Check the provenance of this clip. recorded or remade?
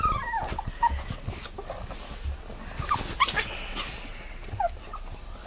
recorded